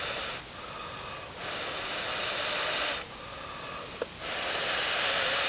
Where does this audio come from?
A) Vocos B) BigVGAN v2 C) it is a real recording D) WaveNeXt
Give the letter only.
C